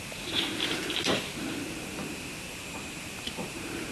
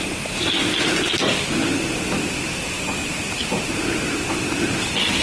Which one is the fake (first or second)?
first